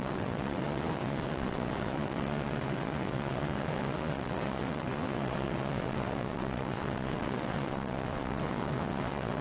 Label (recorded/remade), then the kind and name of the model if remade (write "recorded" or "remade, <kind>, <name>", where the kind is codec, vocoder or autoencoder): remade, vocoder, WaveNeXt